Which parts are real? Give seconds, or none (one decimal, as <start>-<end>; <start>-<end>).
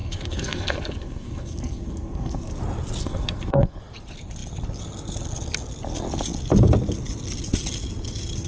2.6-3.0; 3.8-8.5